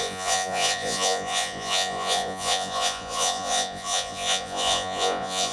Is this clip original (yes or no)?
no